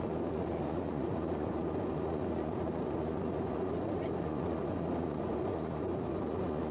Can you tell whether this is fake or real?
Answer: fake